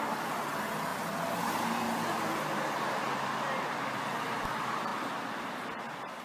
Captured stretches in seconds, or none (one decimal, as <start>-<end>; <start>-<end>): 0.0-6.2

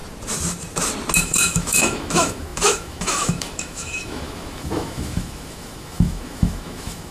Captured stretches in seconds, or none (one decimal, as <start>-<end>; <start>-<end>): 0.0-1.2